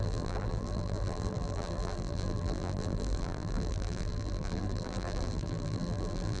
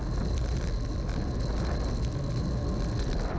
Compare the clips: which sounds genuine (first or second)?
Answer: second